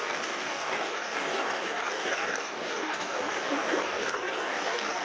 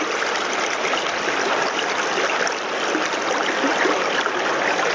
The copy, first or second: first